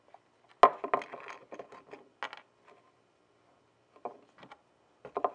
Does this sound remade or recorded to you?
recorded